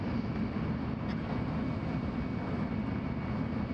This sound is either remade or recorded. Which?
recorded